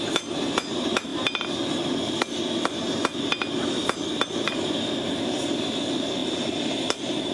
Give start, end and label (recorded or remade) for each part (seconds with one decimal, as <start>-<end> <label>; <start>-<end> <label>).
0.0-1.1 remade; 1.1-5.1 recorded; 5.1-7.3 remade